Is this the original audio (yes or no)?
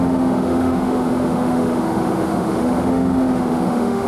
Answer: no